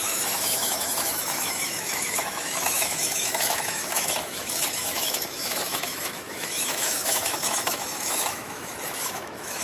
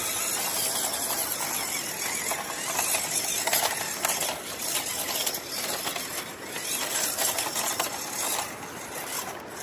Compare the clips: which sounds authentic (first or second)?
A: second